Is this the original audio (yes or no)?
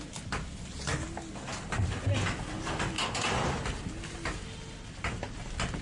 yes